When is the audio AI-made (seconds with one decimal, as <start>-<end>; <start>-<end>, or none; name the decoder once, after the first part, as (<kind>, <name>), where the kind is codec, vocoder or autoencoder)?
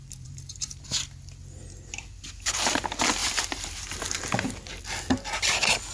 0.0-0.8 (vocoder, BigVGAN v2); 3.2-4.8